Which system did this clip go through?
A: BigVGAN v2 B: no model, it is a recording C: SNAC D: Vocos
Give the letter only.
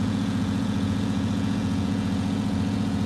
D